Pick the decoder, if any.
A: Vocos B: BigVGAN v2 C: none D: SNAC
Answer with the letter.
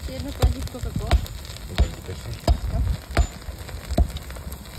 C